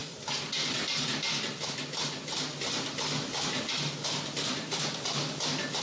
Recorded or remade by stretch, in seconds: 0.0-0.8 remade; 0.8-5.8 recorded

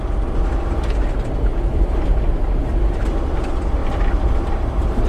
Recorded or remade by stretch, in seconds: 0.0-1.5 recorded; 1.5-2.3 remade; 2.3-3.8 recorded; 3.8-4.5 remade; 4.5-5.1 recorded